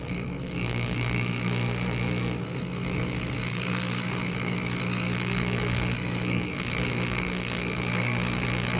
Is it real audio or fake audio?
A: fake